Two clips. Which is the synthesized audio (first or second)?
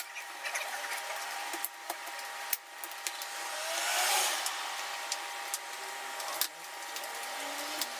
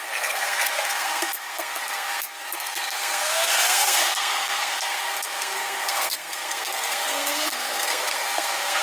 second